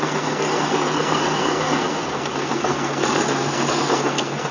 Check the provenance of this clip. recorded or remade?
remade